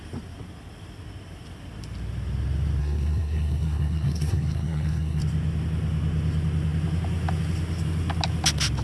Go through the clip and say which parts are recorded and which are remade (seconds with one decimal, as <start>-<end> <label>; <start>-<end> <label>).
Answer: 0.0-2.8 recorded; 2.8-5.2 remade; 5.2-8.8 recorded